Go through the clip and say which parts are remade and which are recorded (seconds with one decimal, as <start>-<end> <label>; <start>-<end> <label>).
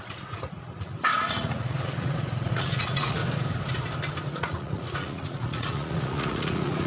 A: 0.0-3.2 remade; 3.2-4.3 recorded; 4.3-6.9 remade